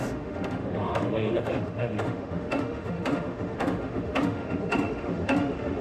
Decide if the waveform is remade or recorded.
remade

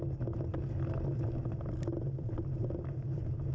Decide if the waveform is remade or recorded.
recorded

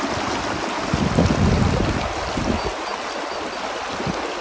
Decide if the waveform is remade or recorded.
recorded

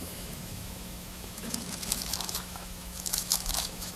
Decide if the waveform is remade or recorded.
remade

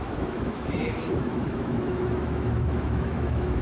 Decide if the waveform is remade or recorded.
remade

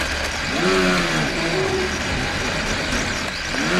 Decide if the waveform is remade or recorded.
recorded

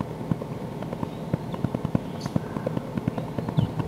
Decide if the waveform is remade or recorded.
recorded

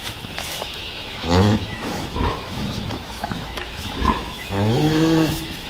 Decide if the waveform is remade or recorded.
remade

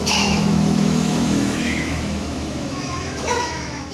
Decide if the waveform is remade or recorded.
remade